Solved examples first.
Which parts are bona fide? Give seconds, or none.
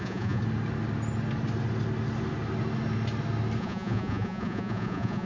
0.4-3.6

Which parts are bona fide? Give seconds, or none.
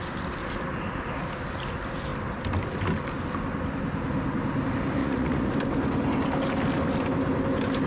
0.0-5.0; 5.5-7.9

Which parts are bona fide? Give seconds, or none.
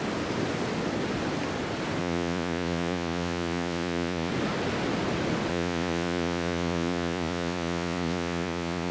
0.0-2.0; 4.3-5.5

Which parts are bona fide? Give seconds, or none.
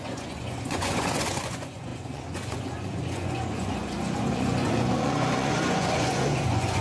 none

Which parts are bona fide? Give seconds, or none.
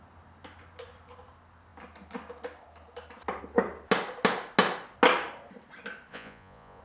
0.0-6.1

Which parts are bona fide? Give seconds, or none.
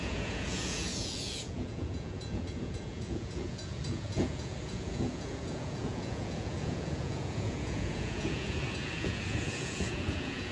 none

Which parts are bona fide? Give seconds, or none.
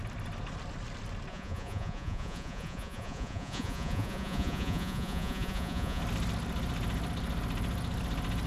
0.0-1.3; 6.0-8.5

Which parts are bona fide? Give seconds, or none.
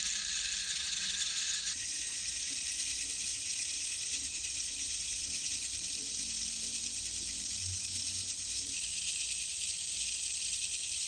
0.0-0.6; 2.5-3.3; 5.5-11.1